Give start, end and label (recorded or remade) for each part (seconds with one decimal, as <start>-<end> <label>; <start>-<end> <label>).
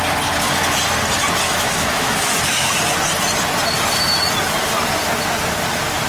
0.0-1.4 recorded; 1.4-2.7 remade; 2.7-6.1 recorded